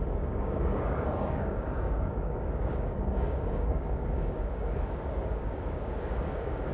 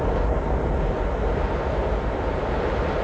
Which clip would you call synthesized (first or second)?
first